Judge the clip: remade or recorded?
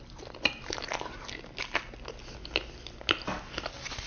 recorded